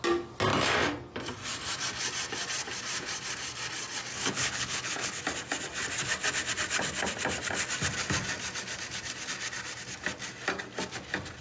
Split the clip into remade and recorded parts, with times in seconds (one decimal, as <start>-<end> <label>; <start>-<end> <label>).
0.0-4.1 recorded; 4.1-5.2 remade; 5.2-11.4 recorded

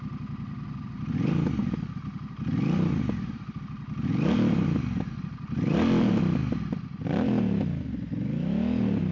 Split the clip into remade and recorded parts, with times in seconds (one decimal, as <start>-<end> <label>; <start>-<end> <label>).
0.0-9.1 recorded

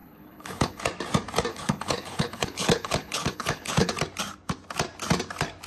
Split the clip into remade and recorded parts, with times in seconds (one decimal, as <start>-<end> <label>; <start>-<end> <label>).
0.0-0.8 remade; 0.8-1.5 recorded; 1.5-3.9 remade; 3.9-5.7 recorded

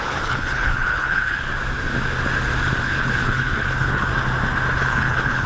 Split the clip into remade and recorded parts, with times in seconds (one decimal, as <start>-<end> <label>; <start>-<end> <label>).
0.0-1.5 remade; 1.5-2.8 recorded; 2.8-4.1 remade; 4.1-4.8 recorded; 4.8-5.5 remade

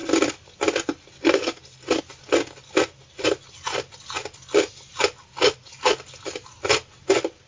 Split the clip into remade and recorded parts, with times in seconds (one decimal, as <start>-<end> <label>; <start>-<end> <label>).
0.0-7.5 recorded

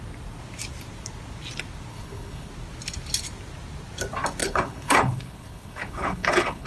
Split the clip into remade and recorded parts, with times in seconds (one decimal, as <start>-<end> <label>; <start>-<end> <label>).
0.0-1.9 recorded; 1.9-2.5 remade; 2.5-4.4 recorded; 4.4-6.7 remade